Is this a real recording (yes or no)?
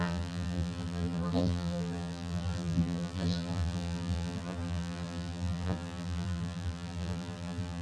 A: no